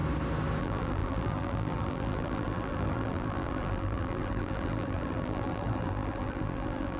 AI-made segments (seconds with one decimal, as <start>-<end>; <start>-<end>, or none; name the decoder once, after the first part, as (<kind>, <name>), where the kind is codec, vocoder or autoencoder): 0.6-7.0 (vocoder, BigVGAN v2)